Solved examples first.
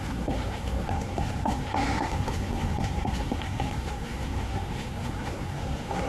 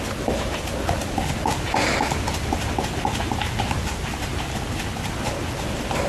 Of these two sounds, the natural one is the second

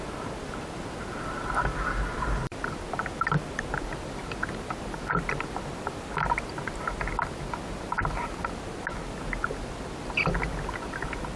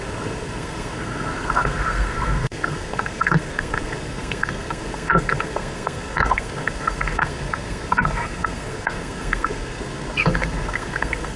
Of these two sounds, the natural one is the first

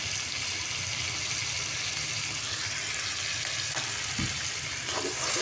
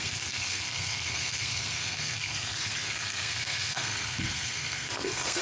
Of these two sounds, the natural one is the first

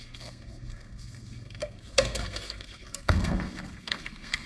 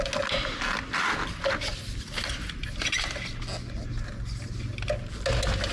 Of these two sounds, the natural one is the second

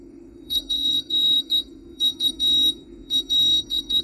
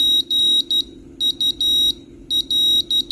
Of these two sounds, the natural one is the second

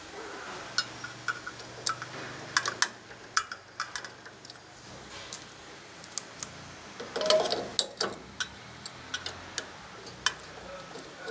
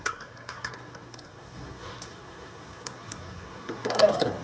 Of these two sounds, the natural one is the first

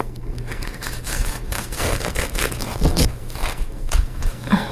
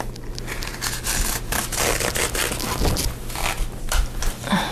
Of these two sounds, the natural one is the second